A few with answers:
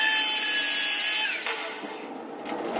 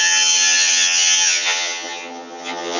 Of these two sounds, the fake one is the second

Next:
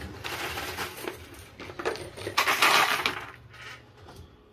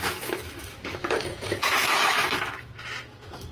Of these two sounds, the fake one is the second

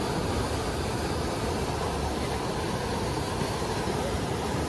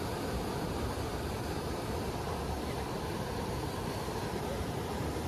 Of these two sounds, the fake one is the second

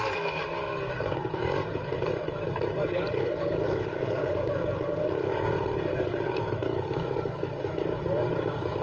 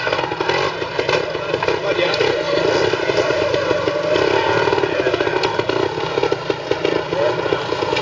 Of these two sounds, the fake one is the first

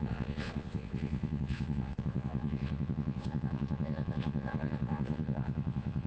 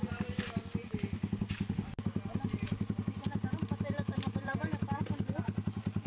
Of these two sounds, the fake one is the first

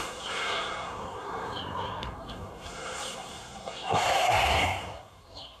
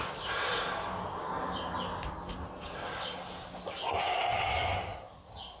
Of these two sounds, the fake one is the first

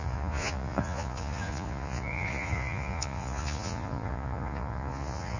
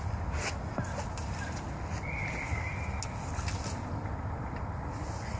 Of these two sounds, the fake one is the first